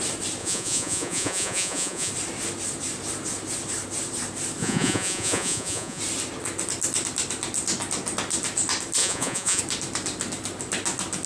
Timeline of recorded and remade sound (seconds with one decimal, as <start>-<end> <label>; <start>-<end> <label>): 0.0-0.4 recorded; 0.4-2.1 remade; 2.1-4.6 recorded; 4.6-6.0 remade; 6.0-9.0 recorded; 9.0-9.6 remade; 9.6-11.3 recorded

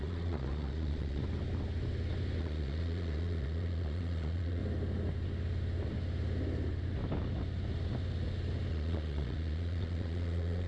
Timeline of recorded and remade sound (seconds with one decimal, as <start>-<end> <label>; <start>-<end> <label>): 0.0-1.2 remade; 1.2-2.4 recorded; 2.4-4.6 remade; 4.6-8.7 recorded; 8.7-10.7 remade